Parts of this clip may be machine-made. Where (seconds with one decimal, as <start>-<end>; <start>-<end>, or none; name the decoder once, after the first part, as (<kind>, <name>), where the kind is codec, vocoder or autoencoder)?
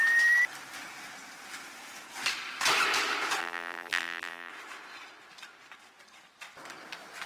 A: 3.4-4.5 (vocoder, BigVGAN v2)